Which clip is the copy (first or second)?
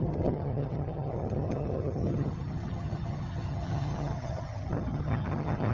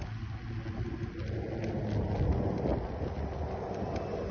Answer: first